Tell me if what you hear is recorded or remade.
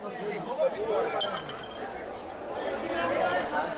recorded